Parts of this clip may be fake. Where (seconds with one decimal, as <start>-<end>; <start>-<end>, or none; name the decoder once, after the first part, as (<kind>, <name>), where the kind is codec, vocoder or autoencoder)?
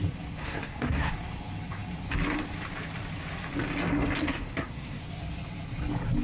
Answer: 0.4-1.1 (codec, SNAC); 4.2-5.0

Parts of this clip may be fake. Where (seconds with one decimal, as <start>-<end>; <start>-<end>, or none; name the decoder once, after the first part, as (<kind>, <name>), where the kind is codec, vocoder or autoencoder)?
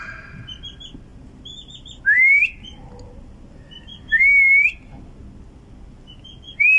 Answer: none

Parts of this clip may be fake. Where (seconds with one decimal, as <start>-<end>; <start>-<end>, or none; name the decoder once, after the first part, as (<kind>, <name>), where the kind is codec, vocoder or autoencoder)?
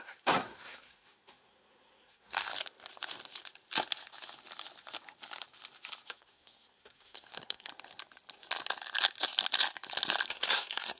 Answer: 0.0-2.5 (codec, SNAC); 6.1-7.7; 10.3-11.0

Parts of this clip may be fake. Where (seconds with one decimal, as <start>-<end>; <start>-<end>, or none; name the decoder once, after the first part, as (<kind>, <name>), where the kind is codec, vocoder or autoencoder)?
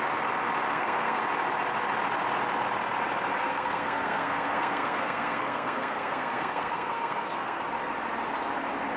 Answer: 0.7-1.2 (codec, SNAC); 3.4-7.6